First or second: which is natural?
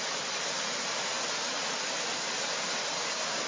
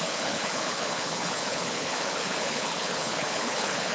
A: first